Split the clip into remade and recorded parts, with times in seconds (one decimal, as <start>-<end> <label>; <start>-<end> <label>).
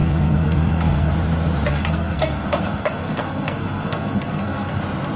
0.0-1.1 remade; 1.1-1.7 recorded; 1.7-4.8 remade; 4.8-5.2 recorded